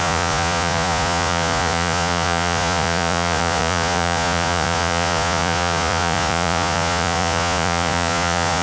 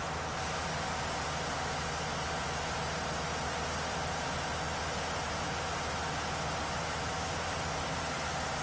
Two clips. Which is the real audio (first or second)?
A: second